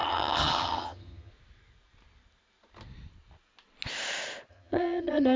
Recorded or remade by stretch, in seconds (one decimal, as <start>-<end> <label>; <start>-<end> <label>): 0.0-1.3 remade; 1.3-4.5 recorded; 4.5-5.4 remade